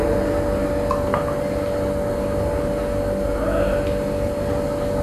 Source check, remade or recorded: recorded